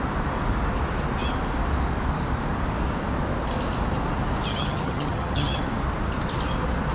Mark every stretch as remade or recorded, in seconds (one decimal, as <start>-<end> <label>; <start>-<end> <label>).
0.0-4.5 recorded; 4.5-5.6 remade; 5.6-6.9 recorded